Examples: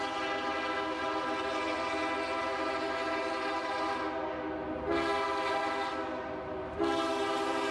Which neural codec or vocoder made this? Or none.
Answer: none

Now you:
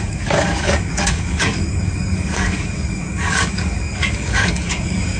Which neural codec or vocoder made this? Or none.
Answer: codec, DAC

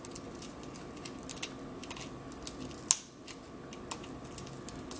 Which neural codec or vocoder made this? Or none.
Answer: none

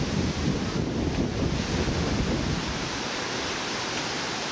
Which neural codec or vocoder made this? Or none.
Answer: none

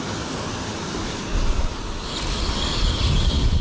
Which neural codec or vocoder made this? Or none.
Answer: none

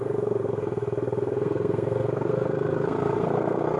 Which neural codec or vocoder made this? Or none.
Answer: codec, SNAC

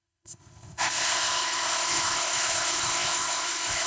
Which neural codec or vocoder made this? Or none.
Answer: codec, ZipCodec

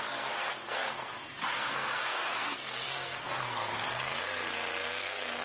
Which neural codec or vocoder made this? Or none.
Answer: codec, SNAC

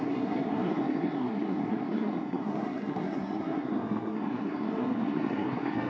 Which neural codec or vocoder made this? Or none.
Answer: codec, SNAC